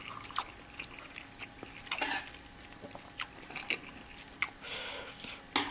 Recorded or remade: recorded